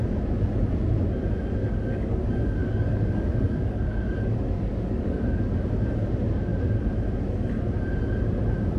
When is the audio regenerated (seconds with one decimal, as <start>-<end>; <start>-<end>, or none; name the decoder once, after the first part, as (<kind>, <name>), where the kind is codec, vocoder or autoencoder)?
1.6-2.2 (codec, DAC); 2.6-5.7